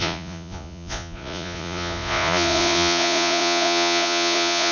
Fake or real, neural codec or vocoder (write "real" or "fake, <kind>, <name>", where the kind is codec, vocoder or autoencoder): fake, vocoder, Vocos